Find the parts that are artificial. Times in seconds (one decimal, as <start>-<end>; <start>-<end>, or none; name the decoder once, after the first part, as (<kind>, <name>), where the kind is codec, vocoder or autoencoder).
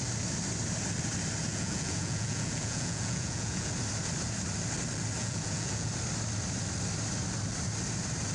1.5-3.7 (vocoder, Vocos); 5.2-5.9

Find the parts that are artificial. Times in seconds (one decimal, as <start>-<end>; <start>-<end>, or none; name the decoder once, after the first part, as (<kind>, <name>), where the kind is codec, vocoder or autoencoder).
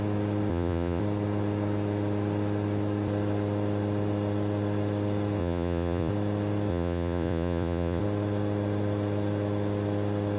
0.5-1.0 (vocoder, Vocos); 5.4-6.1; 6.7-8.0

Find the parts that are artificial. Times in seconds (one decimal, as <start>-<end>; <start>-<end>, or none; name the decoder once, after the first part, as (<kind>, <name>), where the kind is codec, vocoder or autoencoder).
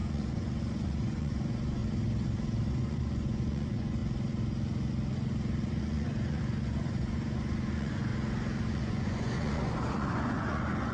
0.0-1.8 (vocoder, Vocos); 2.7-4.0; 5.8-8.1; 8.7-10.9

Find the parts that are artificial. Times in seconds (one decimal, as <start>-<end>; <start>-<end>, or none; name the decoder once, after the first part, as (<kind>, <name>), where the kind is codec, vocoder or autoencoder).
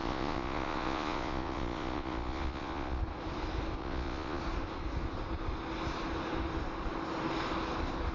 0.0-3.0 (vocoder, Vocos); 3.8-4.4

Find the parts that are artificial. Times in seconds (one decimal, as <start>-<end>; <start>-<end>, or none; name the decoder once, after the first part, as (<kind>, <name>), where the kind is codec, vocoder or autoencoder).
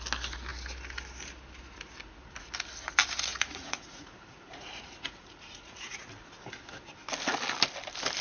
3.3-6.1 (vocoder, Vocos)